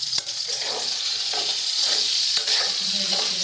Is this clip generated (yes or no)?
yes